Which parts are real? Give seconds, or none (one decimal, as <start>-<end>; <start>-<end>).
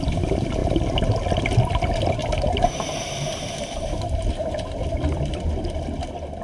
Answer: 0.0-6.4